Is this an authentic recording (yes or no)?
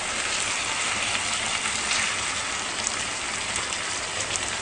yes